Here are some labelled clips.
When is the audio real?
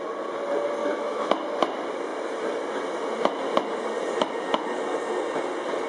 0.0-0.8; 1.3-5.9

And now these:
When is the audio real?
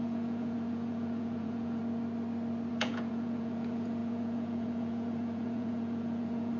1.8-2.7